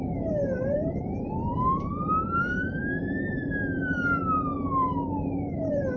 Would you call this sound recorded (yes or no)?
no